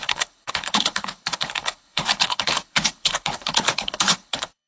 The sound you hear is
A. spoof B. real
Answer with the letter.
A